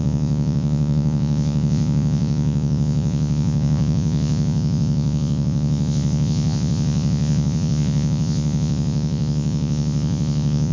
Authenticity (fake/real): fake